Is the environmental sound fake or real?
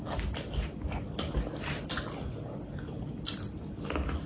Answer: real